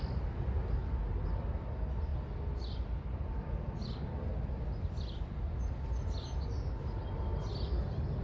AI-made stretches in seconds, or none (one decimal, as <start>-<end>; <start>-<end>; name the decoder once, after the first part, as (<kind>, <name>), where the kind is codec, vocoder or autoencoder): none